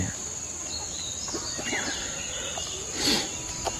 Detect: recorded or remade recorded